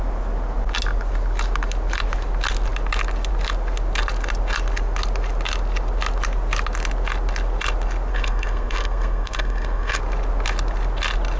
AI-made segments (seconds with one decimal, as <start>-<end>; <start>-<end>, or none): 8.1-10.0